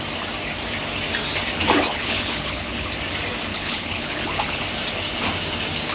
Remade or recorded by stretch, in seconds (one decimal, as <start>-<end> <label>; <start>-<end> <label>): 0.0-1.9 recorded; 1.9-2.9 remade; 2.9-3.5 recorded; 3.5-4.6 remade; 4.6-5.9 recorded